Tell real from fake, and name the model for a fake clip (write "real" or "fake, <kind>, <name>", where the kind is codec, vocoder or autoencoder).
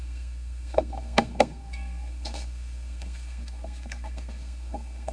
fake, codec, SNAC